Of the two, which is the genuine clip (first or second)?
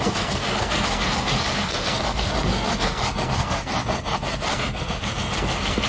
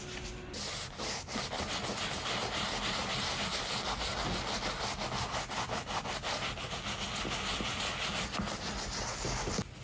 second